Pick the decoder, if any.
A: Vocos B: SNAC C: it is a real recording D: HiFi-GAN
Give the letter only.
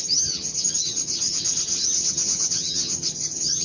D